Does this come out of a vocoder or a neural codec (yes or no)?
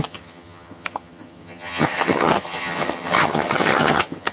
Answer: yes